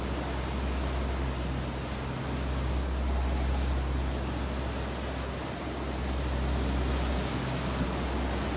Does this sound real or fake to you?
real